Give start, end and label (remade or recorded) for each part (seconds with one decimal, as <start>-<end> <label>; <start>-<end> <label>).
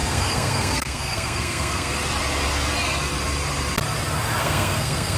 0.0-1.9 remade; 1.9-4.4 recorded; 4.4-5.2 remade